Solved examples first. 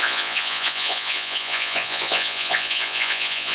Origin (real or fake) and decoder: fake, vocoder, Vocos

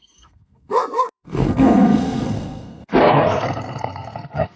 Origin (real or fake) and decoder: fake, codec, SNAC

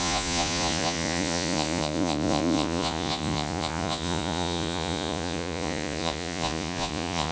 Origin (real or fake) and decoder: fake, vocoder, Vocos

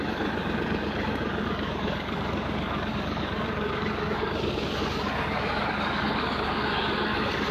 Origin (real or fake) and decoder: fake, codec, DAC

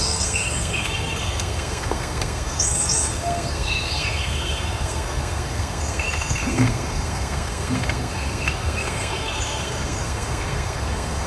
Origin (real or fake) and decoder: fake, codec, SNAC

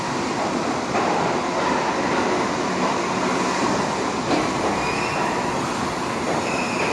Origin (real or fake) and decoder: real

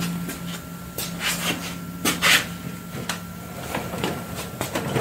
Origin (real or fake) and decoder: real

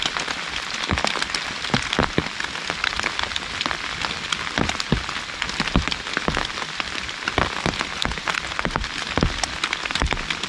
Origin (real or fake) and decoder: real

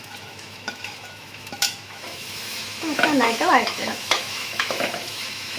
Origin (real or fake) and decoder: fake, autoencoder, DAC-VAE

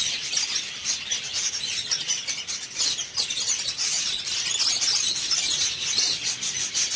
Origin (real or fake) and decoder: real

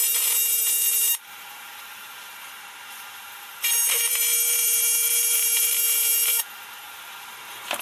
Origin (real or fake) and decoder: fake, vocoder, BigVGAN v2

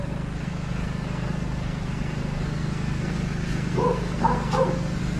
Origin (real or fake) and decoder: fake, codec, SNAC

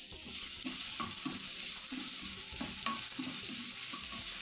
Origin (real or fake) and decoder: real